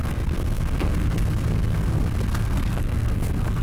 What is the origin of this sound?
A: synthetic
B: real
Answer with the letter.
A